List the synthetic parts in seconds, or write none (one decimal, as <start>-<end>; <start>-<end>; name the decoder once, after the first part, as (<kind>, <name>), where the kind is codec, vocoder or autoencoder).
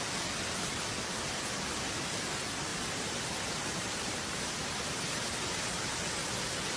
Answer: 2.7-6.0 (vocoder, BigVGAN v2)